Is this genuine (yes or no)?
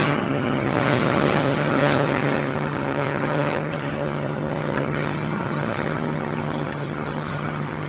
no